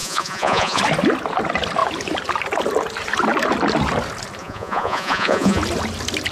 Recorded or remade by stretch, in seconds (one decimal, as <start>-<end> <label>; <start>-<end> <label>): 0.0-0.8 remade; 0.8-4.4 recorded; 4.4-5.6 remade; 5.6-6.3 recorded